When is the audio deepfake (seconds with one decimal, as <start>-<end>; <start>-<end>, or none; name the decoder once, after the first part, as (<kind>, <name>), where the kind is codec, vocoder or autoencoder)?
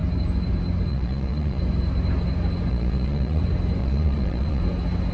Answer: 0.9-1.6 (vocoder, Vocos); 2.7-3.4; 3.8-4.6